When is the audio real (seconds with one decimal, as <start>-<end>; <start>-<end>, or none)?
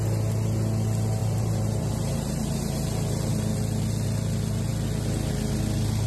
0.0-1.2; 3.3-6.1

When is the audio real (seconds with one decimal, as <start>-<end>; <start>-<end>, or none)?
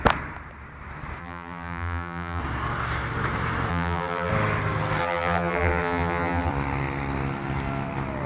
0.0-1.2; 2.4-3.7; 4.3-5.0; 6.5-8.3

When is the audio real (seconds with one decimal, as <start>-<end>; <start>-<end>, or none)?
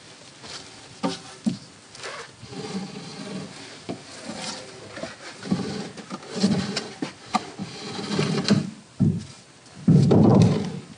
0.0-11.0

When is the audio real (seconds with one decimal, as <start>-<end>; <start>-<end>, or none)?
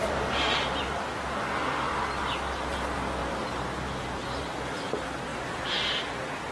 1.9-3.2; 4.6-5.3; 6.0-6.5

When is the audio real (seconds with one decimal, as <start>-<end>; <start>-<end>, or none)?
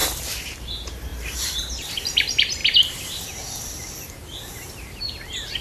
2.6-3.6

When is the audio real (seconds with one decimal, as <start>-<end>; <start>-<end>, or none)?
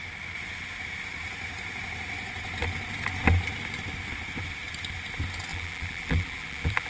0.0-5.5